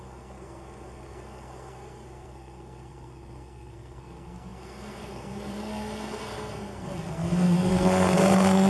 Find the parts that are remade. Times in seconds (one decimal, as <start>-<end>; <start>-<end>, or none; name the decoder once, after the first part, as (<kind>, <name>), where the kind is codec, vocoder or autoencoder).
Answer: 0.0-8.7 (codec, SNAC)